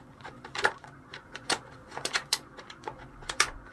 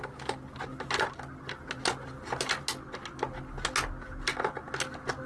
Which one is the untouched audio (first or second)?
second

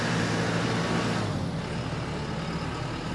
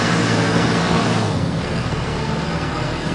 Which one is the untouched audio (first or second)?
first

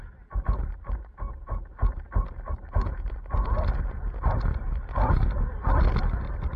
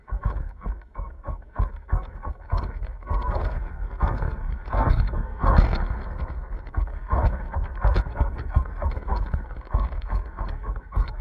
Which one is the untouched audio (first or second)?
first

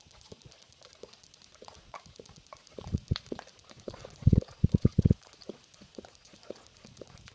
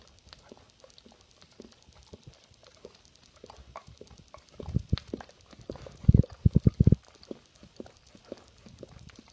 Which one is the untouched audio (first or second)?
second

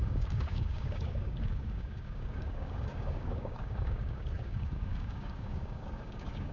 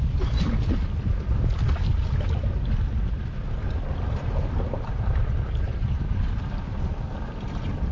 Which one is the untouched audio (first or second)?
second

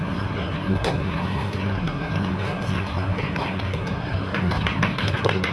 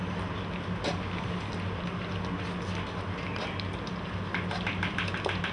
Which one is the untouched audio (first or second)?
second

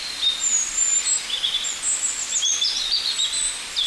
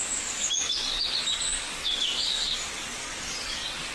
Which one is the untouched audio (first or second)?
first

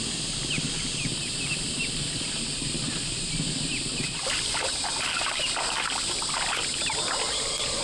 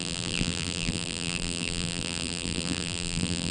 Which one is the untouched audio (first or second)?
first